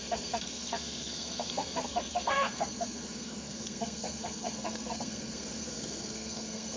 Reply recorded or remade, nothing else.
remade